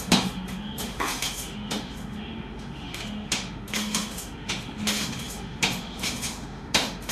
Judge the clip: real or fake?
fake